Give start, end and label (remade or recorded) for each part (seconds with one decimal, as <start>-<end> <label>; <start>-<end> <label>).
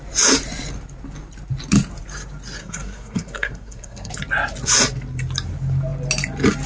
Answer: 0.0-2.6 recorded; 2.6-4.1 remade; 4.1-6.7 recorded